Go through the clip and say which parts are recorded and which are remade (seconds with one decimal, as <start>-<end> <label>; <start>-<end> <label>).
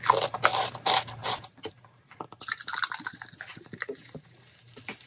0.0-3.5 recorded; 3.5-4.6 remade; 4.6-5.1 recorded